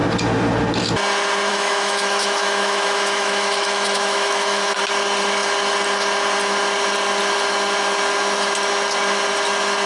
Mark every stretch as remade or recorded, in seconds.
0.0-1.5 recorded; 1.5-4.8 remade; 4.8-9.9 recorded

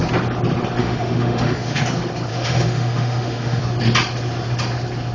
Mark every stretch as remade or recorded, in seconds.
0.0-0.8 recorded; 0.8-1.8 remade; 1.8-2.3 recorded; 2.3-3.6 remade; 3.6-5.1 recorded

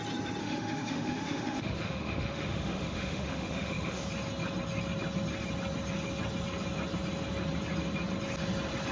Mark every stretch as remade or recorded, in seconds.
0.0-0.4 recorded; 0.4-4.0 remade; 4.0-8.9 recorded

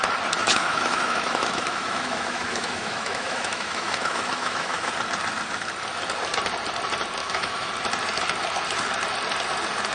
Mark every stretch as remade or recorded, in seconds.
0.0-0.4 recorded; 0.4-4.9 remade; 4.9-7.2 recorded; 7.2-7.7 remade; 7.7-9.9 recorded